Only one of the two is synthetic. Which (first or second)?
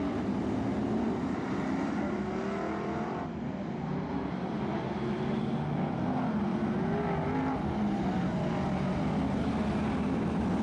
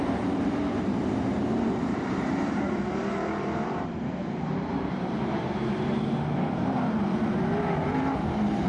second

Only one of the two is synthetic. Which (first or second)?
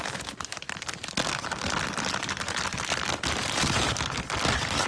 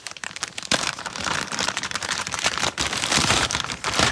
second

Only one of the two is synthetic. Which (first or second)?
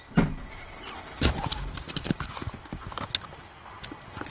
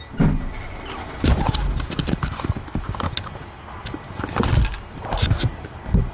first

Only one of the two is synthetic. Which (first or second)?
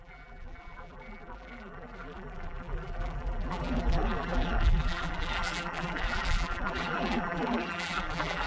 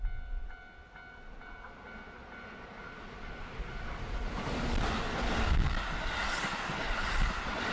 first